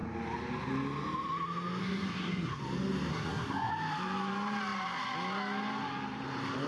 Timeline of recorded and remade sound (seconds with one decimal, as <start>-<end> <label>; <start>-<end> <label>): 0.0-1.8 recorded; 1.8-2.6 remade; 2.6-3.1 recorded; 3.1-3.7 remade; 3.7-6.7 recorded